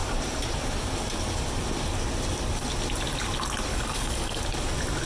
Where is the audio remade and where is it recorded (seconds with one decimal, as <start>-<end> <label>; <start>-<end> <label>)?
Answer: 0.0-3.7 recorded; 3.7-4.4 remade; 4.4-5.1 recorded